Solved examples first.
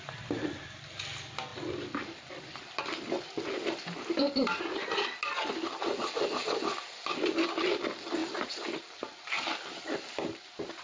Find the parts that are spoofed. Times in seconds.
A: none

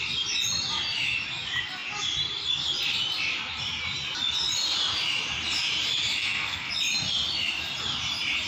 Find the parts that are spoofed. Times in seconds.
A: 6.2-6.7

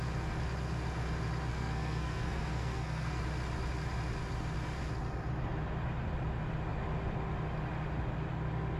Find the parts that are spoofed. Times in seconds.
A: 1.5-3.2

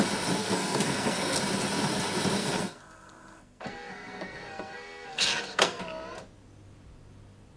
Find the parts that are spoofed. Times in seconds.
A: 0.4-1.4; 2.4-5.8

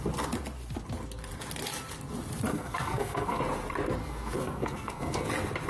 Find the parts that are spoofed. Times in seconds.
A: 2.5-3.4; 4.0-5.3

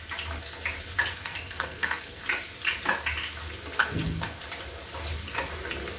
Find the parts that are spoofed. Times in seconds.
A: 1.1-2.2; 3.8-4.4

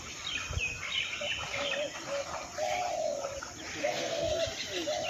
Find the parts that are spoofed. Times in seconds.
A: 3.8-4.3

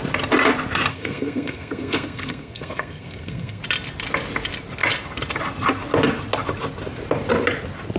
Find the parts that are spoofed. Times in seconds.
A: 0.9-3.6